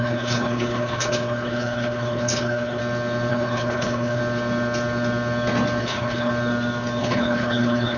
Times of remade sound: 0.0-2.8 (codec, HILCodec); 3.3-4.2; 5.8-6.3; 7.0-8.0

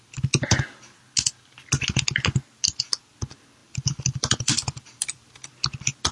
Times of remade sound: 3.6-5.3 (vocoder, BigVGAN v2)

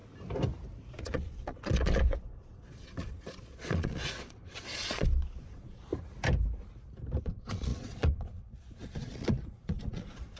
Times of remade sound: 0.9-5.9 (vocoder, Vocos); 7.2-10.4

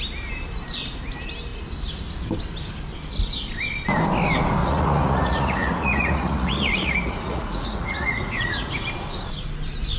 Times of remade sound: 4.6-8.7 (vocoder, Vocos)

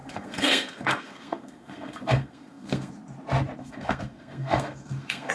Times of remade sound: 0.0-2.9 (codec, SNAC); 3.6-5.3

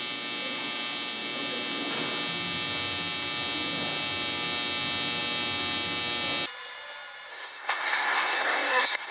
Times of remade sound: 7.3-9.1 (codec, SNAC)

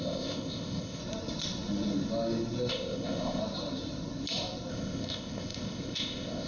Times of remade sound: 0.0-1.0 (codec, ZipCodec); 2.7-3.4; 4.7-6.5

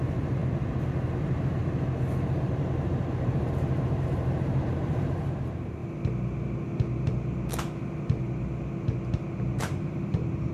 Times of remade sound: 0.0-0.4 (vocoder, BigVGAN v2); 1.2-1.6; 2.4-5.8; 9.6-10.5